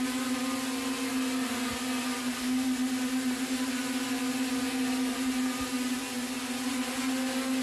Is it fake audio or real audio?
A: real